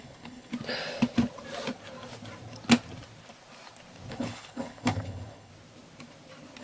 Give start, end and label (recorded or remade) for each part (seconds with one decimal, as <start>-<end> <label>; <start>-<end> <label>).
0.0-0.5 remade; 0.5-4.1 recorded; 4.1-5.5 remade; 5.5-6.6 recorded